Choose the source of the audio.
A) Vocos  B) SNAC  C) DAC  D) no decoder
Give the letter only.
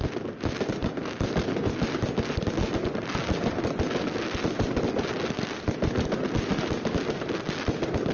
D